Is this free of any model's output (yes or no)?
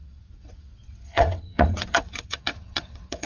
no